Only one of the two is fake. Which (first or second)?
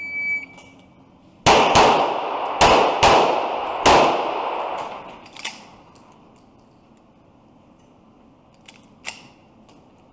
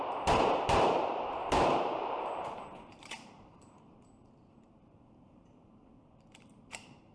second